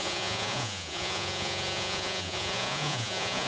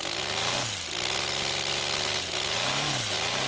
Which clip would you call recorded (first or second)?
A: second